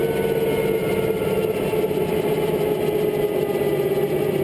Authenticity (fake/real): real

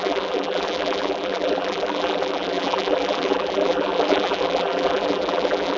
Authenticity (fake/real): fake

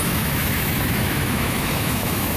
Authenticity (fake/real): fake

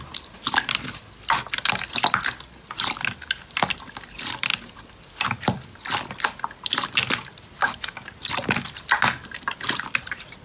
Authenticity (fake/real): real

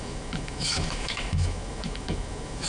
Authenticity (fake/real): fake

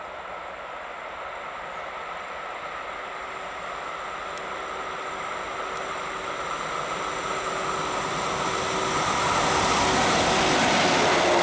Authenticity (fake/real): real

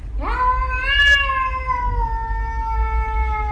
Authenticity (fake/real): real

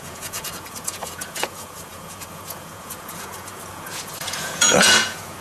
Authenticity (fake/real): fake